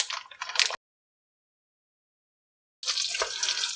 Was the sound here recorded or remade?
recorded